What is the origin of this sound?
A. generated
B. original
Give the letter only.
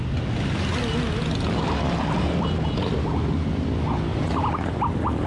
B